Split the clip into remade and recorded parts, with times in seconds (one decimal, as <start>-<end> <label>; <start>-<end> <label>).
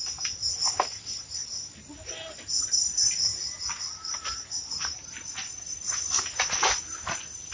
0.0-7.5 recorded